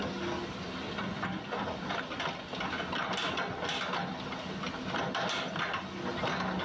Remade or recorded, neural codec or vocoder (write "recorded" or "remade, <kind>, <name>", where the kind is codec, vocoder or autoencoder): recorded